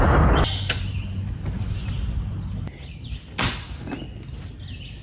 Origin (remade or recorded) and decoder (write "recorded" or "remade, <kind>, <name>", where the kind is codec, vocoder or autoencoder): recorded